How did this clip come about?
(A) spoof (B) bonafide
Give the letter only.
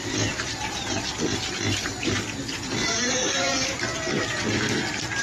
A